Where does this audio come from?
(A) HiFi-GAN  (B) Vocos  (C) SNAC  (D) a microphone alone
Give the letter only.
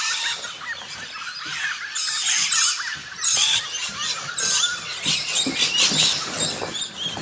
D